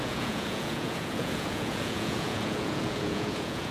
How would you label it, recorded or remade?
remade